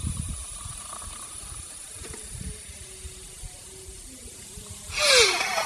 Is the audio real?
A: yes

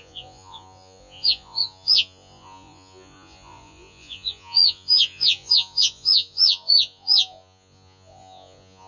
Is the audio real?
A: no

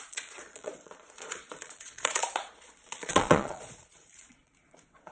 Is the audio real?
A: no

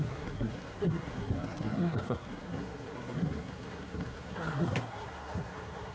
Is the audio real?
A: no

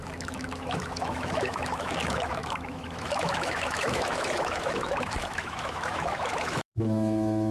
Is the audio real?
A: no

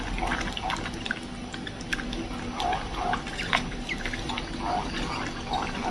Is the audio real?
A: yes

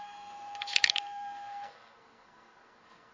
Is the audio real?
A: no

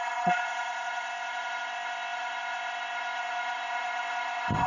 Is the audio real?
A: no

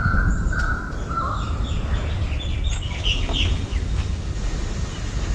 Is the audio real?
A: yes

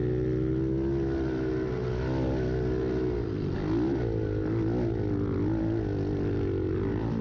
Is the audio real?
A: yes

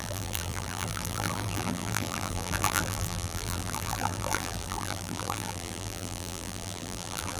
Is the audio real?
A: no